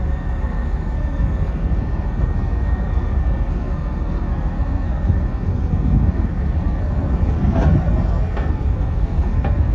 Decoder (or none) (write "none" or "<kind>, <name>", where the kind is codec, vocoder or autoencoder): codec, SNAC